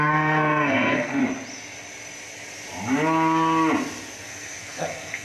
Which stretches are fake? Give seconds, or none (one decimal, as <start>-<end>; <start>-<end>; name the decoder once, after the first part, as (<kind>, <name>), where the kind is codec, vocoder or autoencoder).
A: 0.0-1.2 (codec, SNAC); 4.3-5.2